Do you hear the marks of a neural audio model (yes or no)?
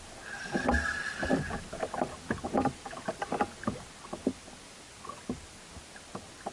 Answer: no